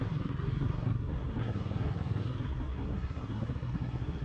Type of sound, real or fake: fake